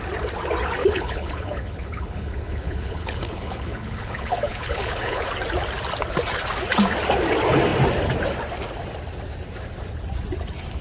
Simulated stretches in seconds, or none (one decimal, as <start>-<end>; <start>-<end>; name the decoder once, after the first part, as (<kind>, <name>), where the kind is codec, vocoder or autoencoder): 0.8-5.3 (codec, HILCodec)